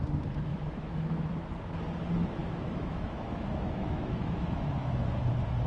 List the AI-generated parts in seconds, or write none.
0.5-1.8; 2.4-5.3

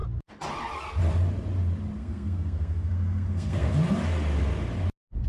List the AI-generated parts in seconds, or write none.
2.0-3.7

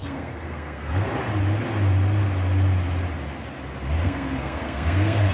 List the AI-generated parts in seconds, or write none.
0.0-1.1; 4.0-5.3

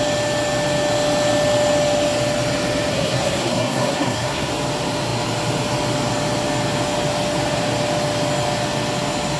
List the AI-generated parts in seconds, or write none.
2.9-4.5